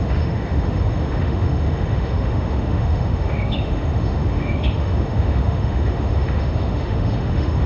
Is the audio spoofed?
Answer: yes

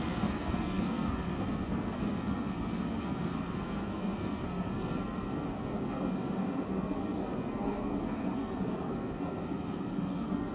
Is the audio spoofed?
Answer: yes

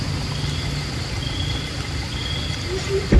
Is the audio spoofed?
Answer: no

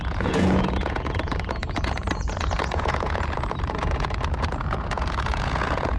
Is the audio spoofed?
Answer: yes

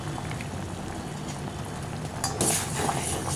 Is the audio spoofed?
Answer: no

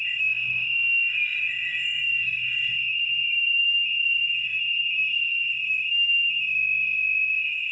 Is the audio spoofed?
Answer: yes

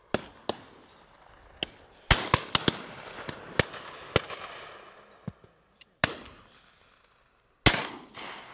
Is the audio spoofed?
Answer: no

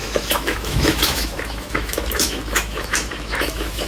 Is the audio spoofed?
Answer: yes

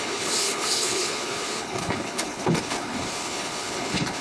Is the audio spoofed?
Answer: yes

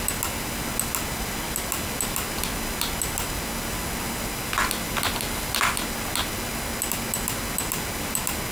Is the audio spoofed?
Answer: no